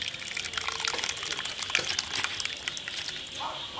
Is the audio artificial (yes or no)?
no